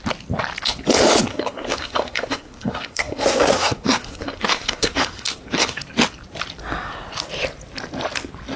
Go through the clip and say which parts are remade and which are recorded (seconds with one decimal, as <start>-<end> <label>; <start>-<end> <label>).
0.0-1.3 recorded; 1.3-5.8 remade; 5.8-8.6 recorded